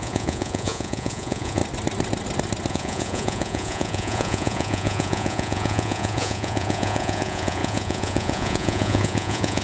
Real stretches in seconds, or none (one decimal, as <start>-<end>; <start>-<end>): 1.6-2.7